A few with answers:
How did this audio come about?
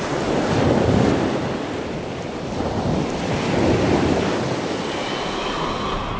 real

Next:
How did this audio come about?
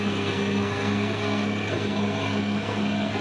fake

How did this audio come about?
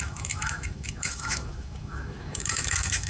fake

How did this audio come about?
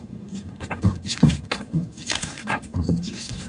fake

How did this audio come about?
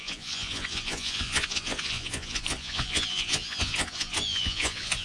fake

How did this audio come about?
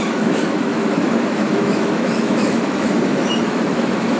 fake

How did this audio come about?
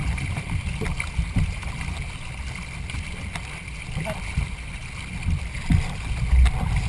real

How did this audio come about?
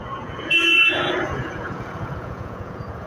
fake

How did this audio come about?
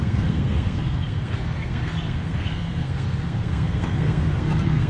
fake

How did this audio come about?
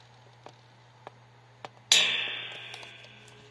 real